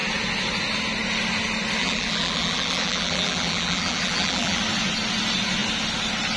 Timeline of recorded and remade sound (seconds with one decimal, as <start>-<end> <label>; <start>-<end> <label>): 0.0-1.8 recorded; 1.8-4.6 remade; 4.6-6.4 recorded